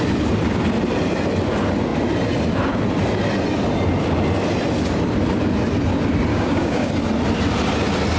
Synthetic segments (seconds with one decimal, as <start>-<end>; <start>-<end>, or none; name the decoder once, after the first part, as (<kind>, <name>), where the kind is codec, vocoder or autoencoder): 6.3-6.9 (codec, DAC)

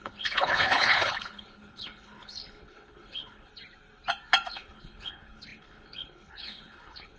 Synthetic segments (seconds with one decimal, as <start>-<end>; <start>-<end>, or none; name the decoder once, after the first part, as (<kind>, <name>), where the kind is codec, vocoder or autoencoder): 0.0-3.5 (codec, HILCodec); 4.5-7.2

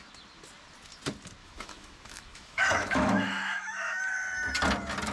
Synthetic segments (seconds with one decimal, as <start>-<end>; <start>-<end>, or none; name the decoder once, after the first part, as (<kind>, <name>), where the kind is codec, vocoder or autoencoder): 1.4-4.0 (autoencoder, DAC-VAE)

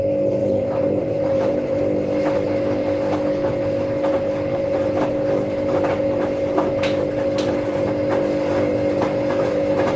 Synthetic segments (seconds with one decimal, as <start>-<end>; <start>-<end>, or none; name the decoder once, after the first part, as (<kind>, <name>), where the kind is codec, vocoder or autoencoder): 0.4-1.8 (vocoder, BigVGAN v2); 4.5-5.2

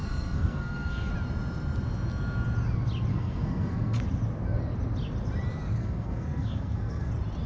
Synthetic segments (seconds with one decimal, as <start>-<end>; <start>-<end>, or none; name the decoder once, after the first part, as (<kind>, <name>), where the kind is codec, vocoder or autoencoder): 0.0-1.1 (codec, SNAC); 3.1-4.0; 5.8-7.1

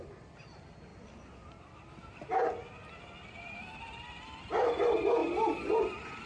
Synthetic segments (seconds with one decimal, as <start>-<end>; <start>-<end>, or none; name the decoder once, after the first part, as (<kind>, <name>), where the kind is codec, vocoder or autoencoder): none

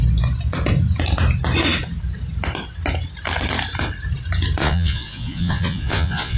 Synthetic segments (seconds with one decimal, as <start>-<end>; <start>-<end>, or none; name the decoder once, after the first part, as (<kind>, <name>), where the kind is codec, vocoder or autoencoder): 4.6-6.4 (vocoder, Vocos)

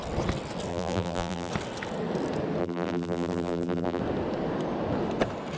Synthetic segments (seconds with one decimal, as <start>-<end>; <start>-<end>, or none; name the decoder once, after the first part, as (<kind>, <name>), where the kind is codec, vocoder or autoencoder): 0.7-1.5 (vocoder, BigVGAN v2); 2.6-4.0